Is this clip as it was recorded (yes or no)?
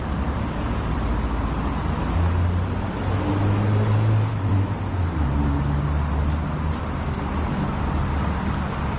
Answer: yes